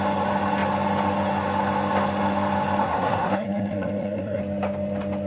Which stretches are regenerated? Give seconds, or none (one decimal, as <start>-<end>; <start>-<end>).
2.8-4.4